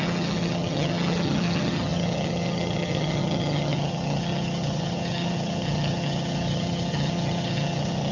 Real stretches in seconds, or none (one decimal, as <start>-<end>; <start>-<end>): none